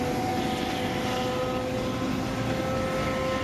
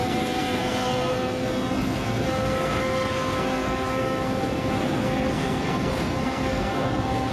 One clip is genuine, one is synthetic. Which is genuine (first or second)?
first